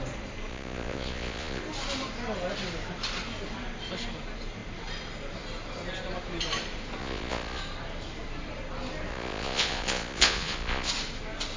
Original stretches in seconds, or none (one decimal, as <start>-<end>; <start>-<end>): 0.0-0.5; 1.6-7.0; 7.6-9.1; 10.9-11.6